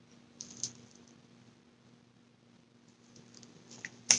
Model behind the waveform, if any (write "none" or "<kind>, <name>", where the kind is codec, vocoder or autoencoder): none